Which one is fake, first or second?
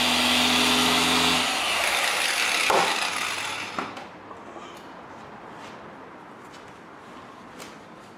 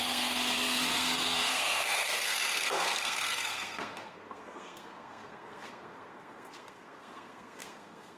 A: second